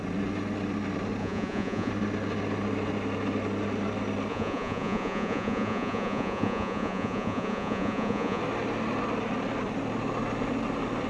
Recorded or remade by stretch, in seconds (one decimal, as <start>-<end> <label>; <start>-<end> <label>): 0.0-1.2 recorded; 1.2-1.9 remade; 1.9-4.3 recorded; 4.3-8.4 remade; 8.4-11.1 recorded

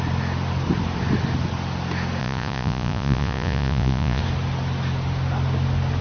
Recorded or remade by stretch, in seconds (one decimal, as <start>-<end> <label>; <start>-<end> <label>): 0.0-2.2 recorded; 2.2-4.2 remade; 4.2-6.0 recorded

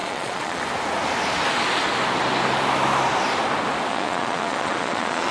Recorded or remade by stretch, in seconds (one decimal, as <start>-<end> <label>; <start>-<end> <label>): 0.0-0.6 remade; 0.6-3.9 recorded; 3.9-5.3 remade

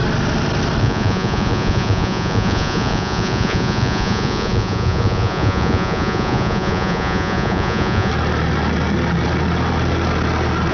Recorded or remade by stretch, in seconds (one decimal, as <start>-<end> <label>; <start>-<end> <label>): 0.0-0.8 recorded; 0.8-8.1 remade; 8.1-10.7 recorded

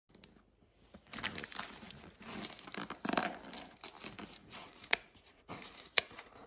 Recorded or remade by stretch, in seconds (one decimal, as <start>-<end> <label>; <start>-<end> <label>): 0.0-4.4 recorded; 4.4-6.5 remade

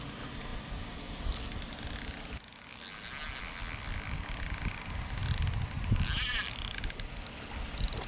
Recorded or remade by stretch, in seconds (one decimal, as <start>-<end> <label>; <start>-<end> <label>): 0.0-8.1 recorded